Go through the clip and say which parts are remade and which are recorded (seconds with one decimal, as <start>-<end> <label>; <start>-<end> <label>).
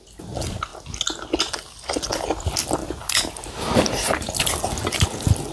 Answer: 0.0-5.5 recorded